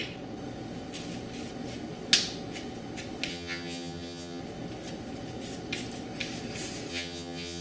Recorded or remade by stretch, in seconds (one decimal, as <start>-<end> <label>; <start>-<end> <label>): 0.0-3.3 recorded; 3.3-4.4 remade; 4.4-6.9 recorded; 6.9-7.6 remade